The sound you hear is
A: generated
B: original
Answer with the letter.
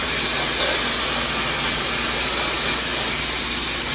B